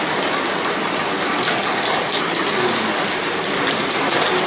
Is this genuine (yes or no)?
yes